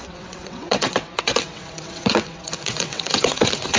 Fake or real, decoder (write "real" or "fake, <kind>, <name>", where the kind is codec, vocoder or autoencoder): fake, vocoder, WaveNeXt